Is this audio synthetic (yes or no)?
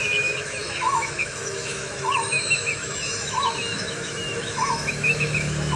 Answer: yes